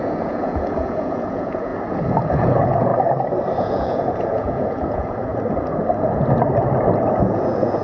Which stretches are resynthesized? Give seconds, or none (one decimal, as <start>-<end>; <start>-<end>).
0.0-1.7; 2.2-2.9; 3.6-5.3; 7.2-7.8